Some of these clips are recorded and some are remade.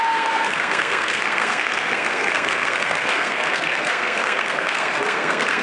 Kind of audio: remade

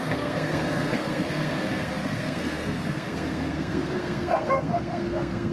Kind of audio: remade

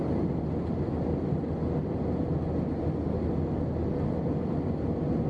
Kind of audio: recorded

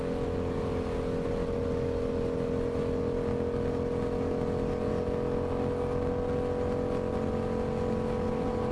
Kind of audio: recorded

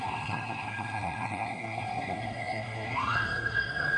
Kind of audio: remade